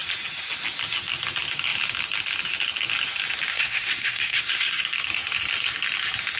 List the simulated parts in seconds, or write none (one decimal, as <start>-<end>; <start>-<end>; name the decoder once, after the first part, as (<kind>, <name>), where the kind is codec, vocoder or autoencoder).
3.5-4.8 (codec, SNAC)